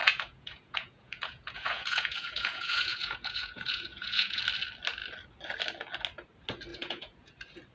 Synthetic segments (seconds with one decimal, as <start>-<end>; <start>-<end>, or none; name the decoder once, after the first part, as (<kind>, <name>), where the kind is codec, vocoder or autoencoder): 0.0-4.4 (vocoder, Vocos); 6.7-7.3